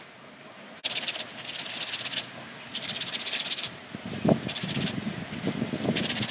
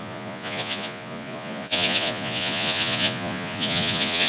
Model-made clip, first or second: second